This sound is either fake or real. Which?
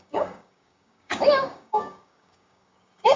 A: fake